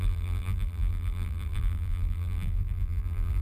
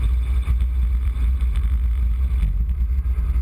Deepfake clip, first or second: first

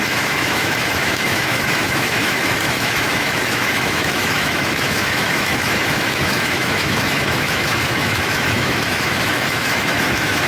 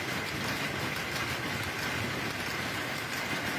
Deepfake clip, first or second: first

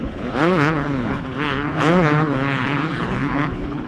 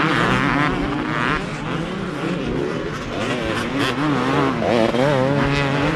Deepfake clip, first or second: first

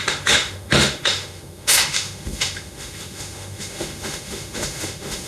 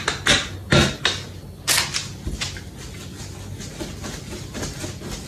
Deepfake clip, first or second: first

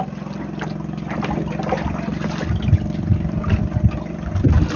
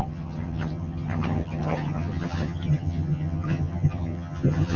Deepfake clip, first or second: second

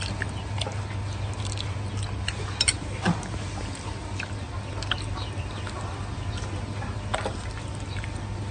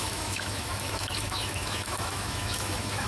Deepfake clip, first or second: second